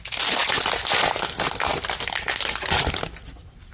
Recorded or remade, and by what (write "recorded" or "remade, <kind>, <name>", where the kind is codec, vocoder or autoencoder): recorded